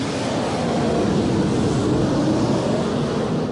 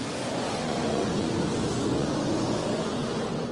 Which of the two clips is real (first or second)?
first